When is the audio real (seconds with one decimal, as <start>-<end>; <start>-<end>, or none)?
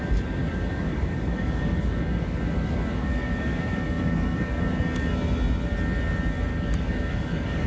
0.0-0.4; 4.7-6.5